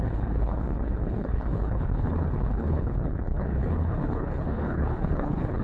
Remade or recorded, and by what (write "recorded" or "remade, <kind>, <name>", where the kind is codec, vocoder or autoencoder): remade, codec, HILCodec